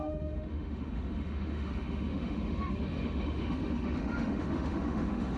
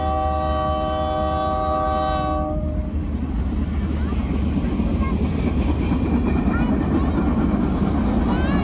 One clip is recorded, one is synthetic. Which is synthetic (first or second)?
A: first